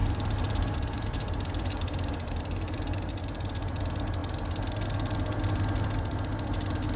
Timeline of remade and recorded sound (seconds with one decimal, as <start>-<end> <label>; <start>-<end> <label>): 0.0-3.2 remade; 3.2-7.0 recorded